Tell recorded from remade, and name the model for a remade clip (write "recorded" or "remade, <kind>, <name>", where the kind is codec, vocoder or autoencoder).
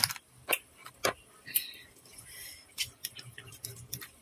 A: remade, vocoder, BigVGAN v2